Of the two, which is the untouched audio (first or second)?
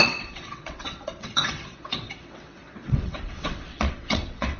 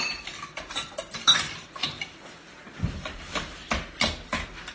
second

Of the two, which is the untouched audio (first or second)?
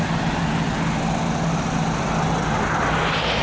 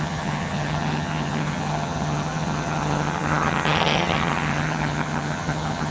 first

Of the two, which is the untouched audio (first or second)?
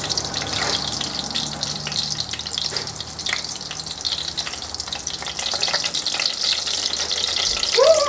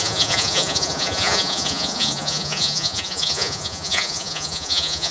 first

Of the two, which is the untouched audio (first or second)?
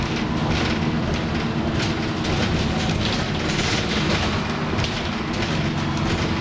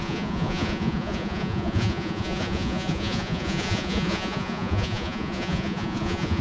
first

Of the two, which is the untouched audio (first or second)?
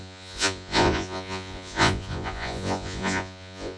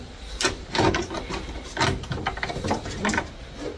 second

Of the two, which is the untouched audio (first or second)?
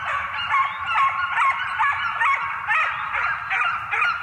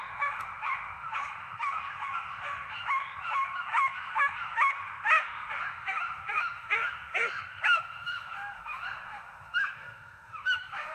first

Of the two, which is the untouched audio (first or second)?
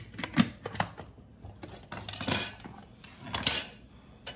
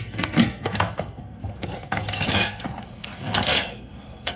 first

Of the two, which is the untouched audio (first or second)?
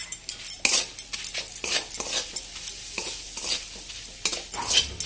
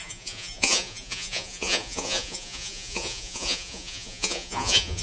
first